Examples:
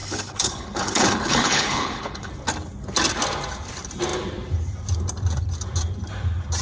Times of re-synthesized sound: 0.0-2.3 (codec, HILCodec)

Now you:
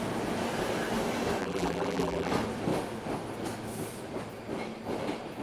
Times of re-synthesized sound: 1.4-2.3 (vocoder, BigVGAN v2)

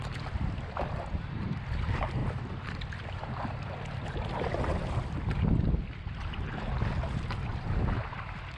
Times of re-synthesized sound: none

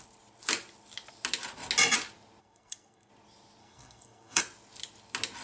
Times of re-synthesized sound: 2.4-3.1 (codec, SNAC); 3.6-4.4

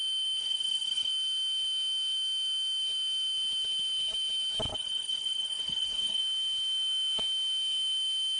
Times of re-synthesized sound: 0.4-1.1 (codec, HILCodec); 4.7-6.2

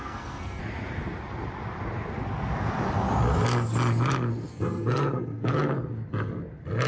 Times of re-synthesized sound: 0.0-0.6 (codec, SNAC); 4.5-5.7